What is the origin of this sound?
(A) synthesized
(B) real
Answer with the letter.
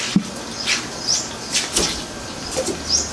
B